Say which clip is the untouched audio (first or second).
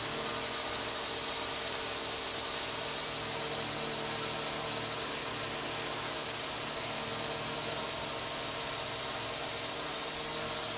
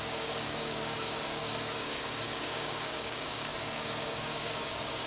first